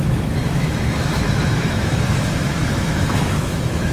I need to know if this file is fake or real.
fake